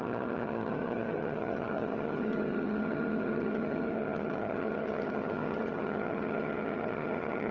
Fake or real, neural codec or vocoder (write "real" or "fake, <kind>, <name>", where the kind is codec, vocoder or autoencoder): fake, vocoder, HiFi-GAN